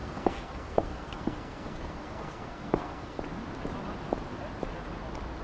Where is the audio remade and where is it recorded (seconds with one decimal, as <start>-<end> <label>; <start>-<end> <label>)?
0.0-3.2 remade; 3.2-5.4 recorded